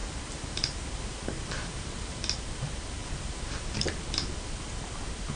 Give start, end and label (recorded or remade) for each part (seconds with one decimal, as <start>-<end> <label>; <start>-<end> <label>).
0.0-2.2 remade; 2.2-3.0 recorded; 3.0-3.7 remade; 3.7-5.4 recorded